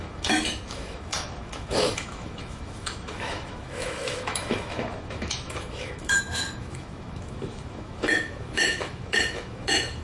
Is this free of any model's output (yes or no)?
no